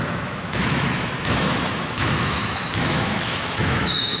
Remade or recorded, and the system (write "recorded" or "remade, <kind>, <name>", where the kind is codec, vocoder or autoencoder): remade, autoencoder, DAC-VAE